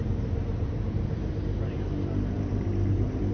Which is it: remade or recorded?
remade